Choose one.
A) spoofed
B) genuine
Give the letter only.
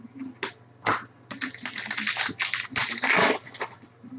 B